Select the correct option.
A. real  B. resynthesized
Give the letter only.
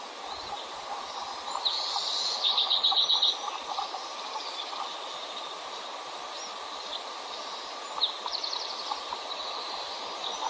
B